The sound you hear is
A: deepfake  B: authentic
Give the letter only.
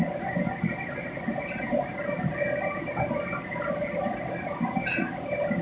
B